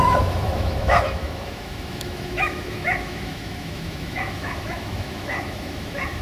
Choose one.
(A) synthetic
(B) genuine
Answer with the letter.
A